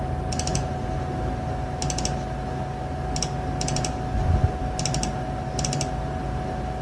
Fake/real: real